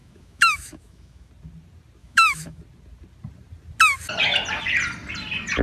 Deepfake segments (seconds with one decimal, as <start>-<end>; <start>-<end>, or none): 0.0-1.3; 2.0-2.6